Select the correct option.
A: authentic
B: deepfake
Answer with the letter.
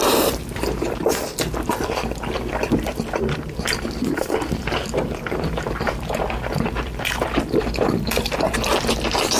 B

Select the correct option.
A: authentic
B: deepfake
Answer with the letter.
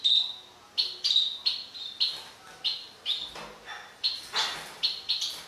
A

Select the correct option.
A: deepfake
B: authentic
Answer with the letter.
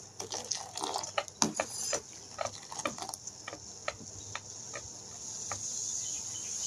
B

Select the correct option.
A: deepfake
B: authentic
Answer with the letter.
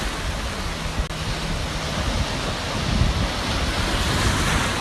B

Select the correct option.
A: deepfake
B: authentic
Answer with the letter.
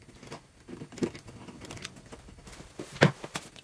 B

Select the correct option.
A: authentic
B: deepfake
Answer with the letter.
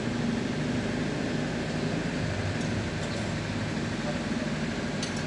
A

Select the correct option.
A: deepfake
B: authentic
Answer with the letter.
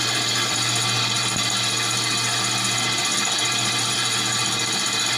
B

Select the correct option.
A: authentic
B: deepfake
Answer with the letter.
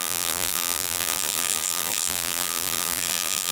B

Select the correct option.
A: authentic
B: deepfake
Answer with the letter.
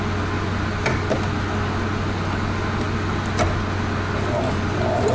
A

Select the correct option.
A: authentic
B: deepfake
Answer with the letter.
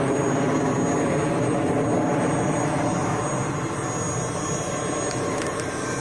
A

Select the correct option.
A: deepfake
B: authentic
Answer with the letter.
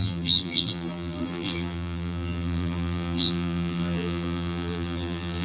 A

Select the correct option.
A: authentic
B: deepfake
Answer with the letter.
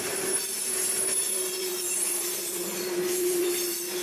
B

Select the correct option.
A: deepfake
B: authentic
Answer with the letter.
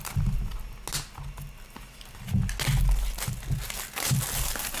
B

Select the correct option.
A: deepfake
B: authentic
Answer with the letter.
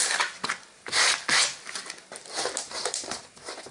B